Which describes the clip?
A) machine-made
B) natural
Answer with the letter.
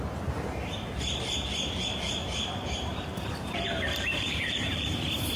A